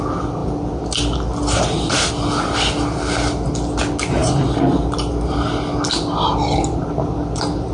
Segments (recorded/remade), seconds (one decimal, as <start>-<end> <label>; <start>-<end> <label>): 0.0-7.7 recorded